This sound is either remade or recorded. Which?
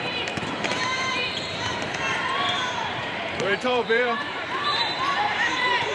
remade